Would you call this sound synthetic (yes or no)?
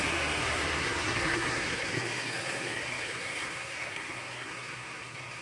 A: yes